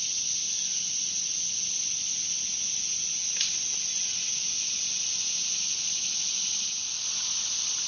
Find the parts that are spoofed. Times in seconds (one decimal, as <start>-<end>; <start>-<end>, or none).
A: none